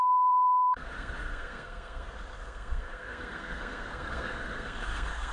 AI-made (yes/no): yes